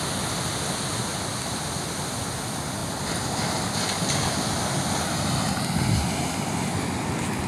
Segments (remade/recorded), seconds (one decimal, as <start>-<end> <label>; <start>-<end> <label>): 0.0-7.5 recorded